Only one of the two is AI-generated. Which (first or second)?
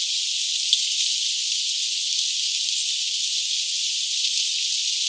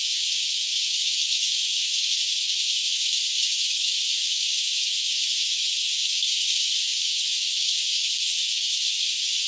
second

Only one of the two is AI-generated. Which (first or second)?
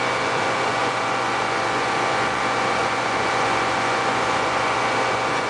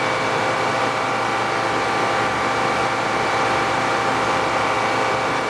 first